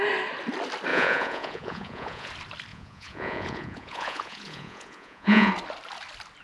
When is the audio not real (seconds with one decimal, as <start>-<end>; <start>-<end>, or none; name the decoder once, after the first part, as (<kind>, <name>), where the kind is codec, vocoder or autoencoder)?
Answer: 0.9-2.3 (vocoder, Vocos); 2.7-5.5